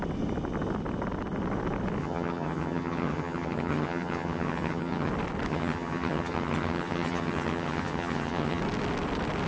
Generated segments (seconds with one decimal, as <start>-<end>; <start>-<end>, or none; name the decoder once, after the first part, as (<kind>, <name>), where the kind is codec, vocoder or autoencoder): 2.0-5.1 (vocoder, HiFi-GAN); 5.5-8.6